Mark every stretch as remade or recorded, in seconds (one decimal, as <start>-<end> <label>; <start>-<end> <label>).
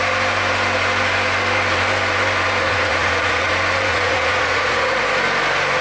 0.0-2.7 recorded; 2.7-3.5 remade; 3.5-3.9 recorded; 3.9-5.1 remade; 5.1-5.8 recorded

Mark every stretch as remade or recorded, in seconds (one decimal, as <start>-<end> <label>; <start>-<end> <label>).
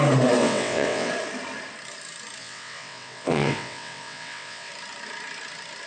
0.0-0.4 recorded; 0.4-1.1 remade; 1.1-2.4 recorded; 2.4-4.7 remade; 4.7-5.9 recorded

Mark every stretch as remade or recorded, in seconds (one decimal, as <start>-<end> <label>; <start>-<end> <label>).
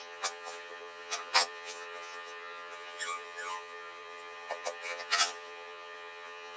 0.0-6.6 remade